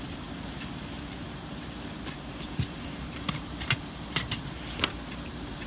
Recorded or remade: remade